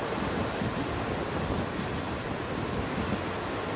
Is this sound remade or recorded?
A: remade